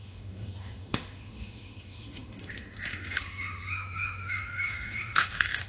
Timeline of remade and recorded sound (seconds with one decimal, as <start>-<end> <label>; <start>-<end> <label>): 0.0-5.7 remade